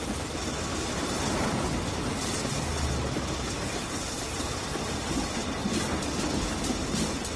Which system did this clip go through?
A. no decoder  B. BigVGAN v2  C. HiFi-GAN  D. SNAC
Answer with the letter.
A